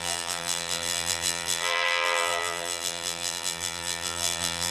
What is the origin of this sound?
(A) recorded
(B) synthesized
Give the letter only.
B